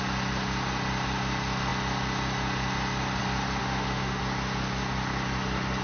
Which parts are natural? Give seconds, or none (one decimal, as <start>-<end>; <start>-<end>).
0.0-3.6; 4.2-5.8